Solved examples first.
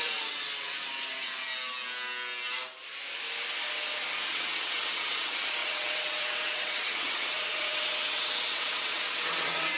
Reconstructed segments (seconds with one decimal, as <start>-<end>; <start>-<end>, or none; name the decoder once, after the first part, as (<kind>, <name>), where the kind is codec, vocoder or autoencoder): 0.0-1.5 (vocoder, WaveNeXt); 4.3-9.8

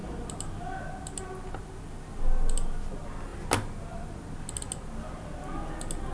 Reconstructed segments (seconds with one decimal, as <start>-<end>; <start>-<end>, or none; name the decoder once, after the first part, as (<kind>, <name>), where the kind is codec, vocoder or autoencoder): none

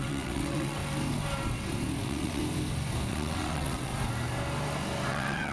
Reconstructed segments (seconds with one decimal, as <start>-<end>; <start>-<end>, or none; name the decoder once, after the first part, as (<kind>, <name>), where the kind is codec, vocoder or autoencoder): 0.0-0.8 (vocoder, WaveNeXt); 2.0-2.4; 3.1-3.9; 5.1-5.5

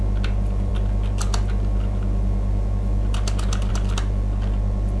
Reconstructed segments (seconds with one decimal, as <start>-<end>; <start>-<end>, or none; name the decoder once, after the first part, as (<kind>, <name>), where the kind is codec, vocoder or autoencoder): none

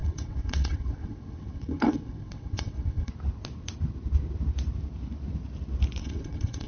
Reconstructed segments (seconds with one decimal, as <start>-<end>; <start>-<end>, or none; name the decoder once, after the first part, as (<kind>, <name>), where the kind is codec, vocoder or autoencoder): 0.0-3.1 (vocoder, WaveNeXt); 6.0-6.7

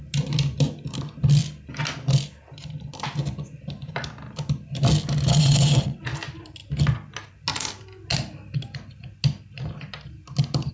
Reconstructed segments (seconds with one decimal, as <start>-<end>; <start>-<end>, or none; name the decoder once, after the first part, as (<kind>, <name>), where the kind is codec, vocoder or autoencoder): 5.4-6.0 (vocoder, WaveNeXt)